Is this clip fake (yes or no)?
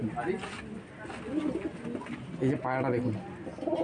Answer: no